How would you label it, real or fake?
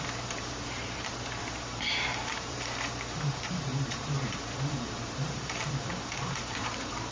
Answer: fake